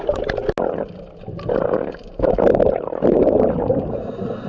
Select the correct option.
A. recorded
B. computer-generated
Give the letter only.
A